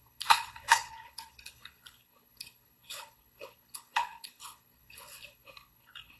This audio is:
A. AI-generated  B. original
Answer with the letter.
A